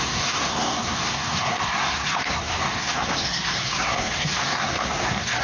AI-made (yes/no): yes